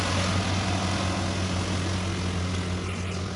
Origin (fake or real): real